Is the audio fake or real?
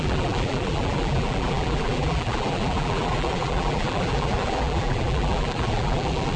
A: fake